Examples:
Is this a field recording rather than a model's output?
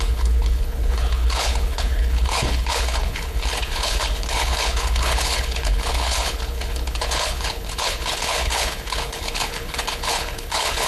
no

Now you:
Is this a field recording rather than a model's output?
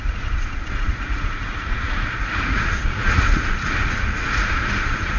no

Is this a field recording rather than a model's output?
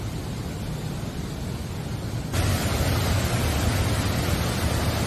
yes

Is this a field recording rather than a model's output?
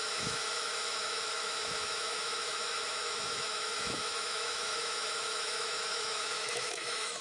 no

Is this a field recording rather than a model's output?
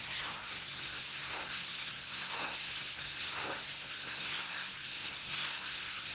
no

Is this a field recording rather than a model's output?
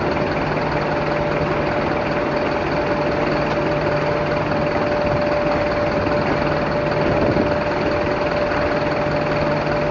yes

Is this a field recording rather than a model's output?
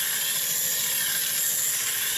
yes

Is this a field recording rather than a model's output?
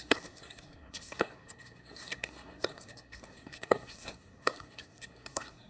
no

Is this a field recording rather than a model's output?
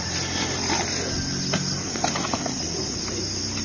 yes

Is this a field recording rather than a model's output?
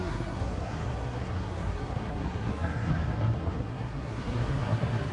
no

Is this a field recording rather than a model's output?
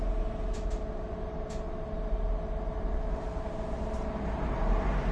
yes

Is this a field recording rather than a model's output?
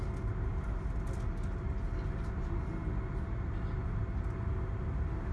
yes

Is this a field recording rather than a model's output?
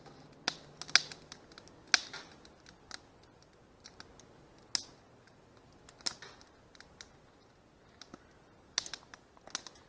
yes